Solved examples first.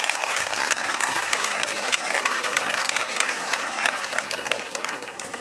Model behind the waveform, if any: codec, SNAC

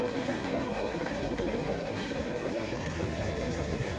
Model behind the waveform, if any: codec, SNAC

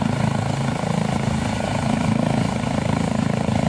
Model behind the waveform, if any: none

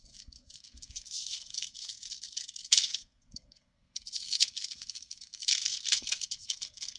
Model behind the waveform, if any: codec, SNAC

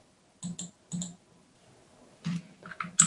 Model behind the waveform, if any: none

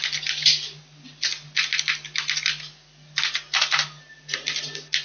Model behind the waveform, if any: none